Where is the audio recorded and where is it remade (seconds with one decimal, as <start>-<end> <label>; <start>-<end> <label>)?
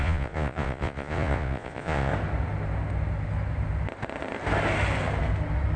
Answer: 0.0-2.1 remade; 2.1-5.8 recorded